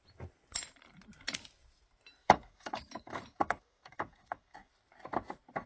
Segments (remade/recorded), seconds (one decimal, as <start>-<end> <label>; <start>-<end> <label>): 0.0-2.2 recorded; 2.2-4.7 remade; 4.7-5.7 recorded